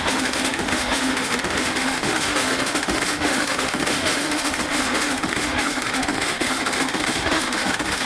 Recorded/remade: remade